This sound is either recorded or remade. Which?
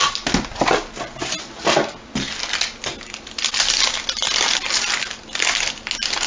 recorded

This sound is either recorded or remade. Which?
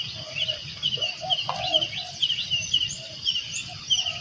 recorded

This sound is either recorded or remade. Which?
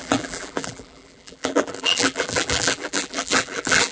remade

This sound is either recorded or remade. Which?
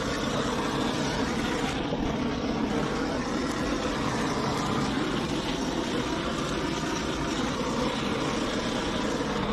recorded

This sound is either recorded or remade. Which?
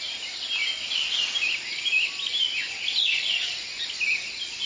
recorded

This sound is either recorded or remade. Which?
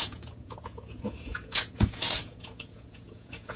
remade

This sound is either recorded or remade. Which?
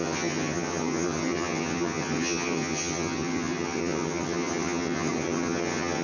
remade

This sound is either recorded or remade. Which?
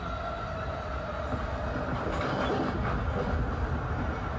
recorded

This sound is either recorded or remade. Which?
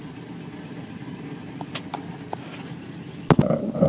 recorded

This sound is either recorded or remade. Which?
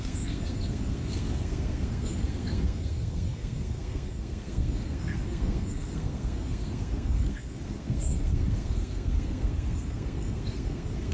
remade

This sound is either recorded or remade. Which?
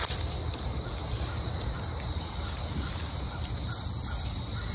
recorded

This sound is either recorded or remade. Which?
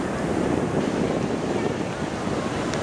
remade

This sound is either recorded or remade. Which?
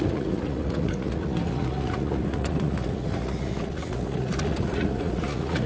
remade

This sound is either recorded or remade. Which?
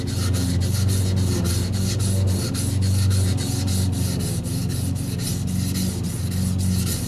recorded